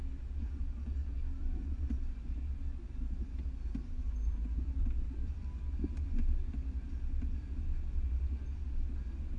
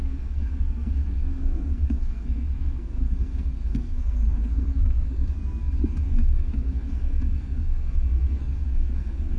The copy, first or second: second